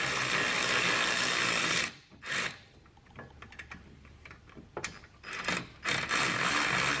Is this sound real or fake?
real